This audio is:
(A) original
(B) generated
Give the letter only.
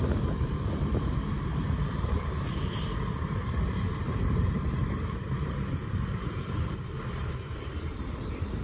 B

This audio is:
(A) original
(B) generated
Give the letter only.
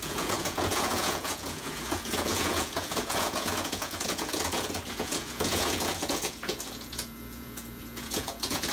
B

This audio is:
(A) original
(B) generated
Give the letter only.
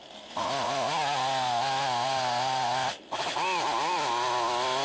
A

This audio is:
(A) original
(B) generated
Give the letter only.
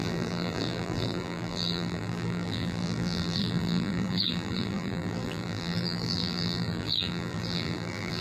B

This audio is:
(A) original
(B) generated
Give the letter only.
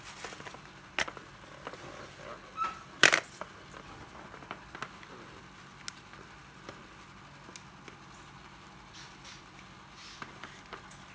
A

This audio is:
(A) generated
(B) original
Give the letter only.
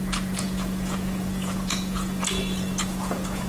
A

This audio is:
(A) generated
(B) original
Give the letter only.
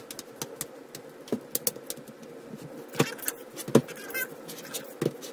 B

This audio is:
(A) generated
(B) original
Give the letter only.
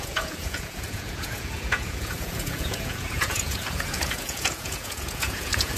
A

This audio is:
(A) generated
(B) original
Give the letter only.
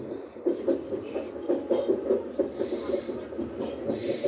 A